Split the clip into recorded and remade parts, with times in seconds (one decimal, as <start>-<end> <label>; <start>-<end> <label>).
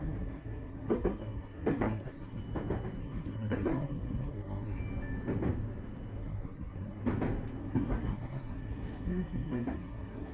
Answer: 0.0-2.4 remade; 2.4-3.0 recorded; 3.0-4.8 remade; 4.8-6.2 recorded; 6.2-7.0 remade; 7.0-7.6 recorded; 7.6-10.3 remade